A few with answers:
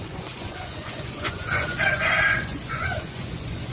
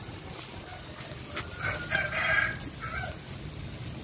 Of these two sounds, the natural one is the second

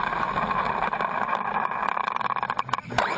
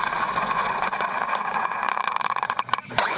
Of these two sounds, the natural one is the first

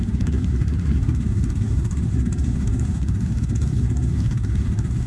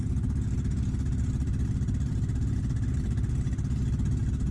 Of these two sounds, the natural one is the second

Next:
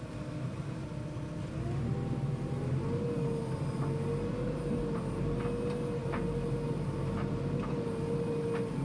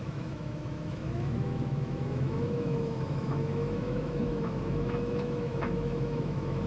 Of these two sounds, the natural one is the first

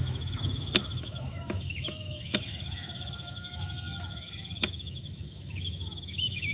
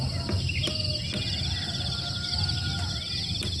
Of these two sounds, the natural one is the second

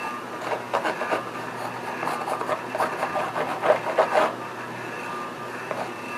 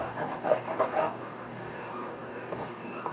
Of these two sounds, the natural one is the first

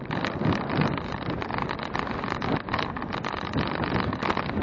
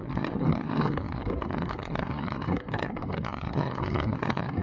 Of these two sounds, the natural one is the first